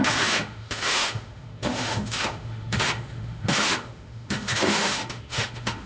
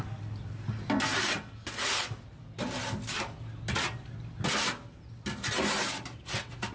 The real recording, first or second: second